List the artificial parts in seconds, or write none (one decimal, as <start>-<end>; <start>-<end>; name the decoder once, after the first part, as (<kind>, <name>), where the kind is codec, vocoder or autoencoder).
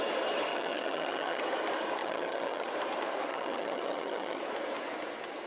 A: 0.5-1.4 (vocoder, HiFi-GAN); 2.0-2.7; 3.3-4.4